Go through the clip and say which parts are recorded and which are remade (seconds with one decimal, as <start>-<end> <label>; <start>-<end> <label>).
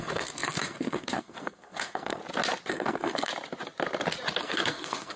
0.0-2.2 remade; 2.2-2.7 recorded; 2.7-3.3 remade; 3.3-4.4 recorded; 4.4-5.2 remade